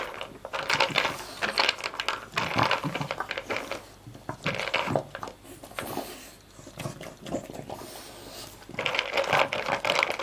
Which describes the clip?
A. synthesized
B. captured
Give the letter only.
B